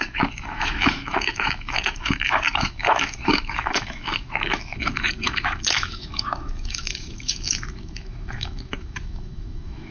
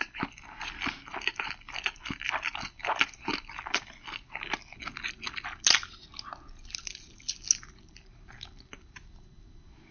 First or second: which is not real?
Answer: first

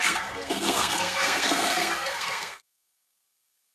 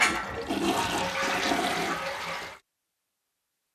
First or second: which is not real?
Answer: first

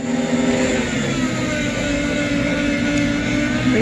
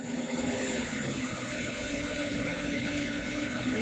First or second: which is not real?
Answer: second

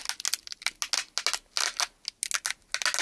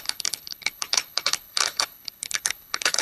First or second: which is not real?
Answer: second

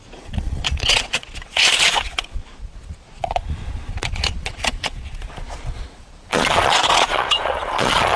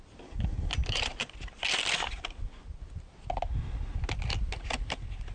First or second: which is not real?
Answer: first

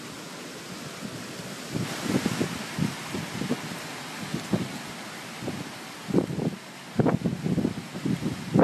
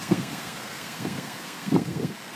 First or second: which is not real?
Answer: second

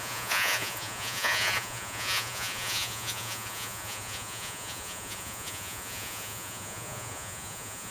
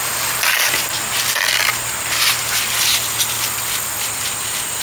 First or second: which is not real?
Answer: first